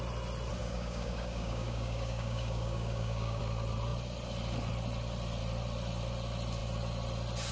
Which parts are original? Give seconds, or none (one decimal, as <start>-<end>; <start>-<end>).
0.0-0.6; 3.4-7.5